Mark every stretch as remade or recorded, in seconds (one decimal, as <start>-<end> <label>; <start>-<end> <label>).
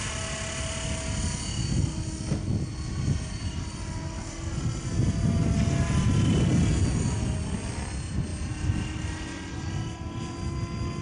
0.0-11.0 recorded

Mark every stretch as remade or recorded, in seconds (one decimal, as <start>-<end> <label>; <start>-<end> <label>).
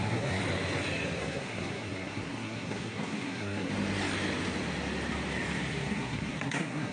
0.0-0.4 remade; 0.4-1.2 recorded; 1.2-3.7 remade; 3.7-5.7 recorded; 5.7-6.9 remade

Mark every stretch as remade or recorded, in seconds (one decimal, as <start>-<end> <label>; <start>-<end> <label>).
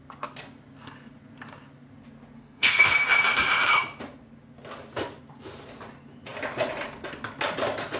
0.0-2.4 recorded; 2.4-2.9 remade; 2.9-8.0 recorded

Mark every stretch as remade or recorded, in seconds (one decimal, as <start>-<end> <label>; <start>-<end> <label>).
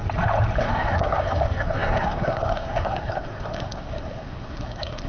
0.0-0.6 recorded; 0.6-5.1 remade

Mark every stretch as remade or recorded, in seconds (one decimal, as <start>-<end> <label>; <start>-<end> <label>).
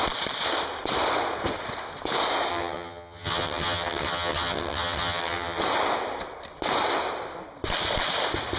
0.0-2.5 recorded; 2.5-5.6 remade; 5.6-8.6 recorded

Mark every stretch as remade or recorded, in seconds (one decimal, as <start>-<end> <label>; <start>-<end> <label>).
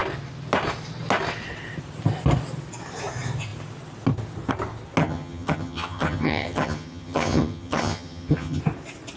0.0-5.0 recorded; 5.0-8.6 remade; 8.6-9.2 recorded